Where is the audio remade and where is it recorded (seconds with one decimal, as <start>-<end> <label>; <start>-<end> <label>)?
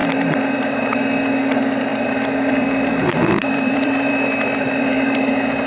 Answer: 0.0-0.8 remade; 0.8-1.9 recorded; 1.9-5.3 remade; 5.3-5.7 recorded